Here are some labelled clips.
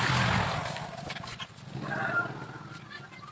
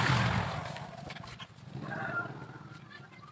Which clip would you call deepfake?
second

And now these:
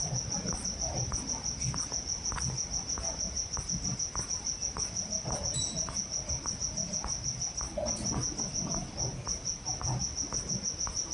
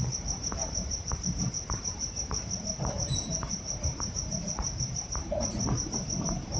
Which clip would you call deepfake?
second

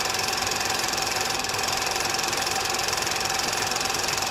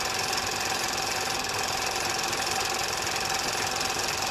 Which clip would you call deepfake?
first